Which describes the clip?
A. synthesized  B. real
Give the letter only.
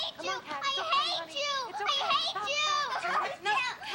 A